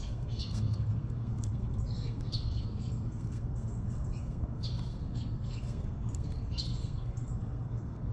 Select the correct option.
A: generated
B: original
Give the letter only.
A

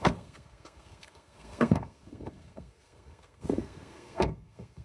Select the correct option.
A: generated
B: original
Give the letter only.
A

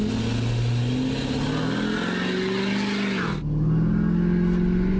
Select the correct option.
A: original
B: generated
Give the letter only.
A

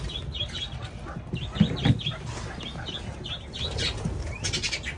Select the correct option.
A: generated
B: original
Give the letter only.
B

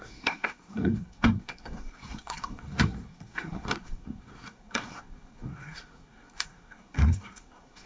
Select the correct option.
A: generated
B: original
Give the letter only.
A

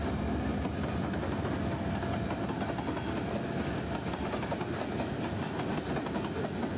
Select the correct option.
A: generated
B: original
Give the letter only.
B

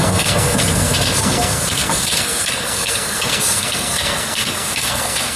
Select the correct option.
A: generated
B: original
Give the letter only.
A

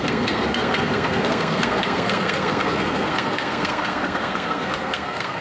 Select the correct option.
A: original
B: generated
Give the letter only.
B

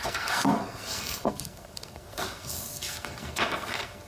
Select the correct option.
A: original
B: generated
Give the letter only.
B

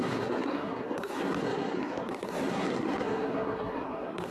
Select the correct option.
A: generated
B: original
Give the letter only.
A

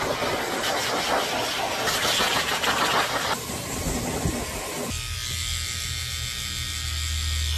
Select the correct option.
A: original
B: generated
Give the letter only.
A